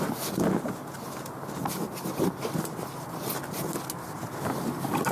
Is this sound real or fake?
real